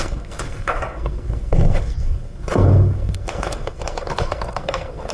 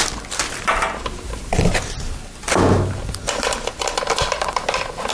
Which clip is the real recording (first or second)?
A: second